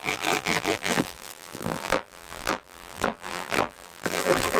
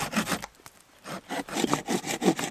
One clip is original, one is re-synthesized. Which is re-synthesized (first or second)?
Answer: first